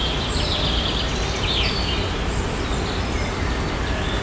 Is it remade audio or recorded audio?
recorded